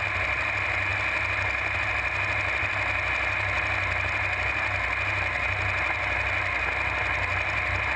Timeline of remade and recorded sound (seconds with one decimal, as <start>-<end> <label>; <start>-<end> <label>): 0.0-8.0 recorded